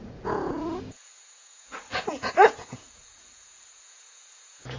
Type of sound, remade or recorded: remade